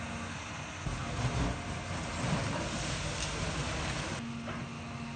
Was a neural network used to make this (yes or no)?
no